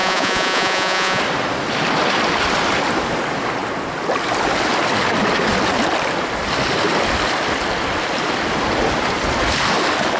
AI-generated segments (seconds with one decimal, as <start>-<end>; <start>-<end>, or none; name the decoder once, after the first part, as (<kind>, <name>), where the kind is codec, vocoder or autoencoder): 0.0-1.2 (vocoder, Vocos)